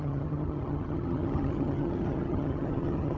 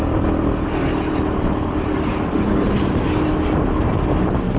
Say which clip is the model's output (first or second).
first